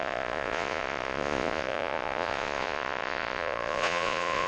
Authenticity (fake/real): fake